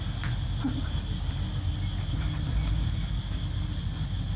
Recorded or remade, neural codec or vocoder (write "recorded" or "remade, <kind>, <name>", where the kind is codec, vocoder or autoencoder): recorded